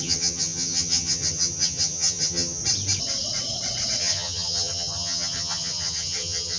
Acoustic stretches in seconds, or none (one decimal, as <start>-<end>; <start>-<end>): 2.6-4.0